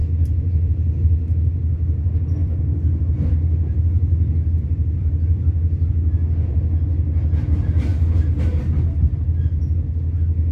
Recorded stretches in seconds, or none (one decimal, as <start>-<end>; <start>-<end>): 0.7-2.4; 5.9-10.5